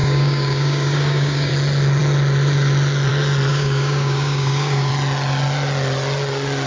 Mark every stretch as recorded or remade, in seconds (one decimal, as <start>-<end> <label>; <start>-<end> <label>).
0.0-1.5 remade; 1.5-3.5 recorded; 3.5-4.9 remade; 4.9-6.7 recorded